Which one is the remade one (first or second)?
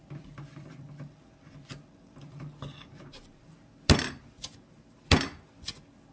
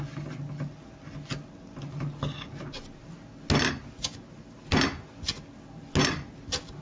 first